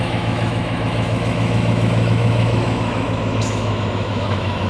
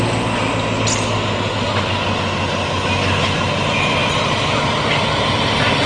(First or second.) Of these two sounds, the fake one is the first